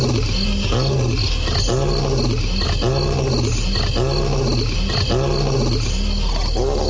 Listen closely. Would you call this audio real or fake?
real